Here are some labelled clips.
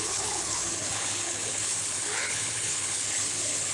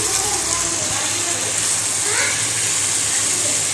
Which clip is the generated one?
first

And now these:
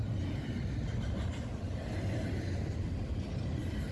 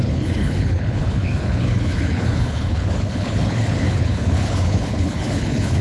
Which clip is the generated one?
second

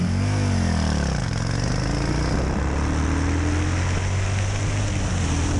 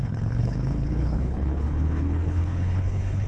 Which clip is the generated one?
second